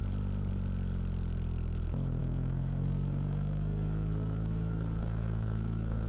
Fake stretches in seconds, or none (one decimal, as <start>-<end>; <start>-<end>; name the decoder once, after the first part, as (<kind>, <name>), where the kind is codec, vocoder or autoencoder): 2.2-6.1 (codec, SNAC)